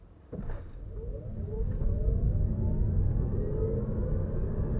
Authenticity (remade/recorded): recorded